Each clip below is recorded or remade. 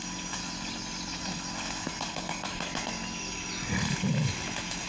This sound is recorded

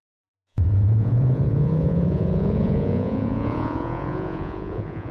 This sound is remade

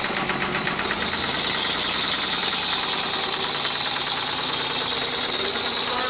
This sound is recorded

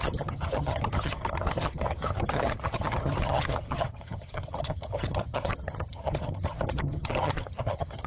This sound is remade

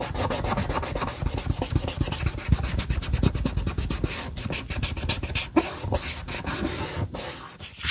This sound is recorded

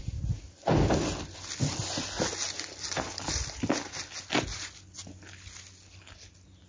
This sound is recorded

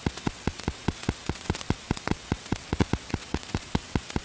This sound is remade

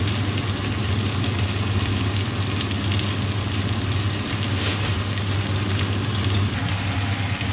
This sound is recorded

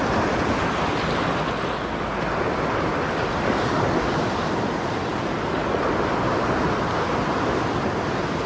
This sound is recorded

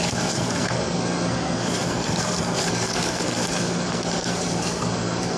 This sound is remade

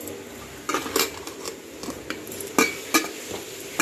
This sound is recorded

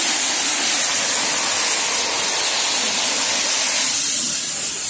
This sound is recorded